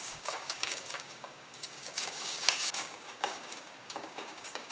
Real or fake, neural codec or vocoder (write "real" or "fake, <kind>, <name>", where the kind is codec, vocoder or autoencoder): fake, codec, DAC